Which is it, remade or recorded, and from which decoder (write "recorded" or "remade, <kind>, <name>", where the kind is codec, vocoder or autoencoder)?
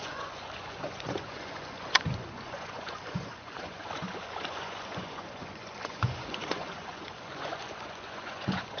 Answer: remade, vocoder, Vocos